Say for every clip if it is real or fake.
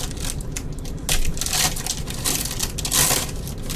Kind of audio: real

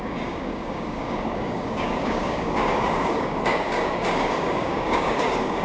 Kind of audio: fake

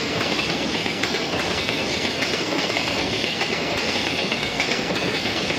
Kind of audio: fake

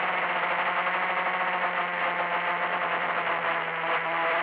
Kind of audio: real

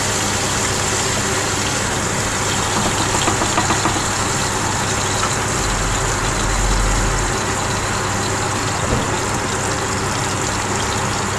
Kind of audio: real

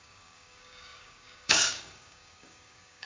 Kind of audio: fake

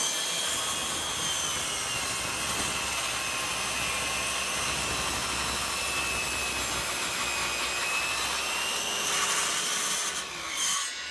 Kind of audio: real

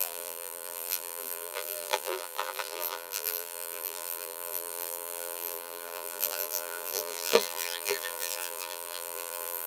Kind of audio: fake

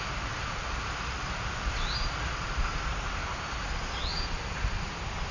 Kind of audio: real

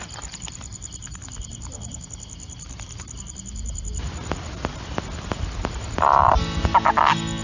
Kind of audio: real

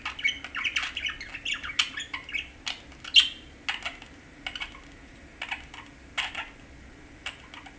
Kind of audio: real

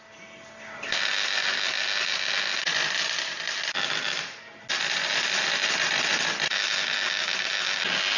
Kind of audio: real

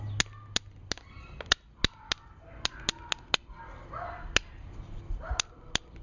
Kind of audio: real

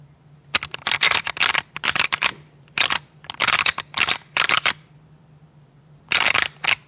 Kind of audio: real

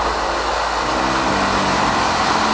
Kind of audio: real